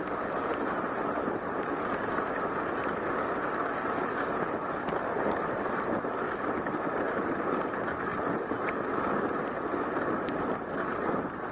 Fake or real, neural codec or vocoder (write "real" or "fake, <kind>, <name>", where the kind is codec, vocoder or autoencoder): real